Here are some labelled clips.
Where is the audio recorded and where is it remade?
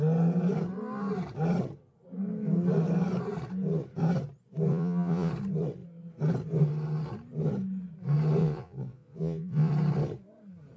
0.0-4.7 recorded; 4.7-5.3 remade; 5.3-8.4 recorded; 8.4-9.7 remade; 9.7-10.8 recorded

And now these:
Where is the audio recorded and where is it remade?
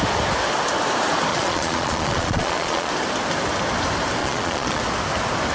0.0-1.3 recorded; 1.3-2.9 remade; 2.9-4.2 recorded; 4.2-4.8 remade; 4.8-5.5 recorded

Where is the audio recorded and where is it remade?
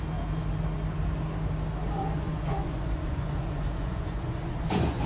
0.0-1.8 recorded; 1.8-5.1 remade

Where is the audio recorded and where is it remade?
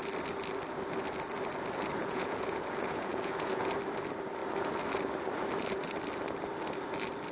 0.0-2.0 recorded; 2.0-3.6 remade; 3.6-7.3 recorded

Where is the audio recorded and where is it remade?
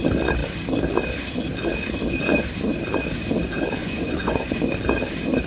0.0-3.8 recorded; 3.8-4.6 remade; 4.6-5.5 recorded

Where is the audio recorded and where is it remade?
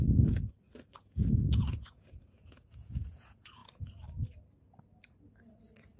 0.0-1.0 recorded; 1.0-3.6 remade; 3.6-6.0 recorded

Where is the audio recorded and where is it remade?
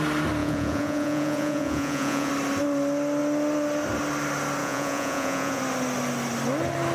0.0-0.4 recorded; 0.4-2.3 remade; 2.3-4.6 recorded; 4.6-5.6 remade; 5.6-6.9 recorded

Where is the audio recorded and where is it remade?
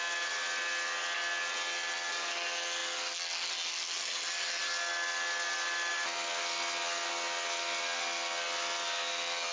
0.0-9.5 recorded